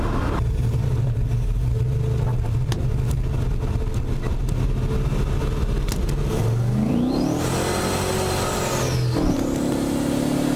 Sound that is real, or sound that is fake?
real